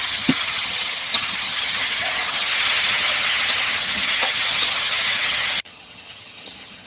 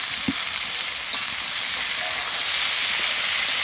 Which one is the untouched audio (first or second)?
second